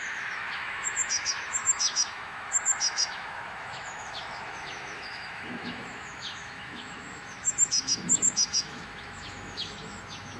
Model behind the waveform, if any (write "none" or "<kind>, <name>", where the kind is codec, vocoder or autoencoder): autoencoder, DAC-VAE